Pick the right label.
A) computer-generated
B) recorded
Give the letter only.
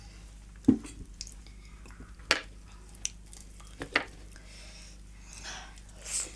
B